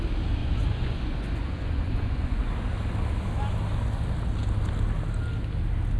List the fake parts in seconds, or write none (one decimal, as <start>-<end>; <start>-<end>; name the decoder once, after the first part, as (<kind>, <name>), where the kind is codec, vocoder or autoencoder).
0.4-2.5 (vocoder, Vocos)